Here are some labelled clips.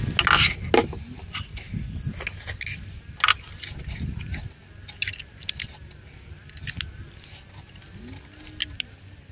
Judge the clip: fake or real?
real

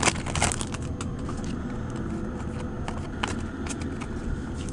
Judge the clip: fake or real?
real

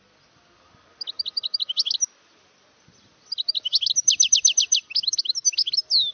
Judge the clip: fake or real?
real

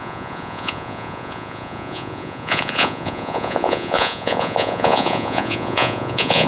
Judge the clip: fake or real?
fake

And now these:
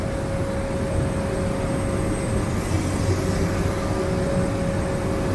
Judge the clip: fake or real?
real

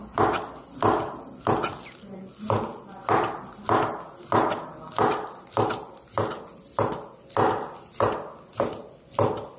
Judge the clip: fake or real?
real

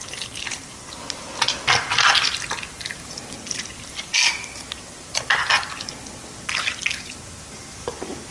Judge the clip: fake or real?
real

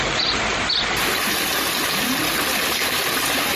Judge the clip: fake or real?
real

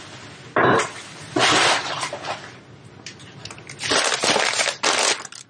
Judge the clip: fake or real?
real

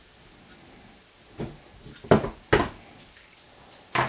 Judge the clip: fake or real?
real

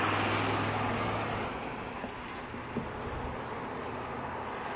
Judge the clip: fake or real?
real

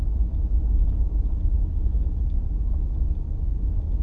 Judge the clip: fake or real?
real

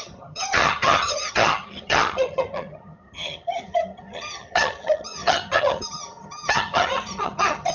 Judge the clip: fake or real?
fake